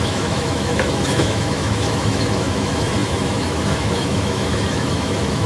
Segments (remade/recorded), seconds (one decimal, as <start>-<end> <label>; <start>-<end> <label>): 0.0-5.5 remade